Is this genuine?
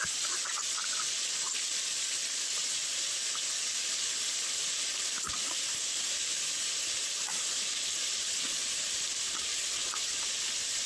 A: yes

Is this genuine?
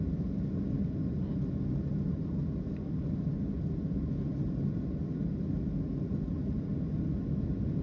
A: yes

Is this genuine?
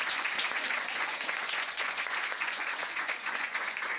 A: no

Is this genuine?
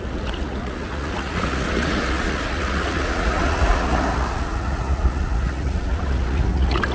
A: no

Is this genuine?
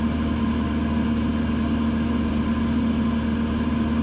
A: yes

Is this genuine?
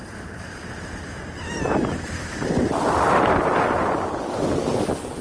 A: no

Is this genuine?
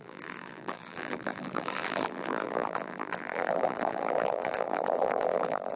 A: no